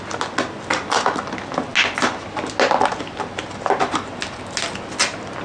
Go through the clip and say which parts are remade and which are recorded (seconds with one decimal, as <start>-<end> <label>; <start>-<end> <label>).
0.0-5.4 recorded